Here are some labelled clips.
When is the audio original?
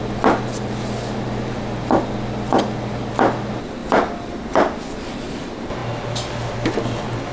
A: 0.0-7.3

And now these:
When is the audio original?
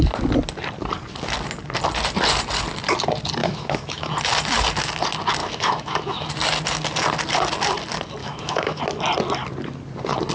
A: 0.0-3.4; 4.1-5.4; 6.3-8.2; 8.8-10.3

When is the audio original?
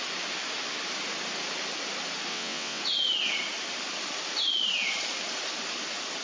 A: 0.0-2.3; 2.8-6.2